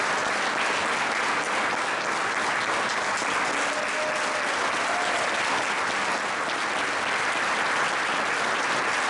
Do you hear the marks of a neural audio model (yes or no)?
no